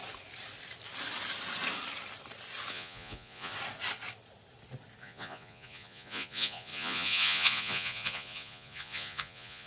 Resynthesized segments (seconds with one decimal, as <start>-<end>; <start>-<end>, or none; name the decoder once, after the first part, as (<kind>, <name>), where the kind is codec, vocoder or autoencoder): 2.7-3.5 (vocoder, Vocos); 5.0-9.7